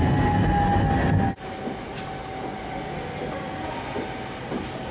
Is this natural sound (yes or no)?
yes